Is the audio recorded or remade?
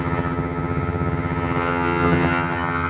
remade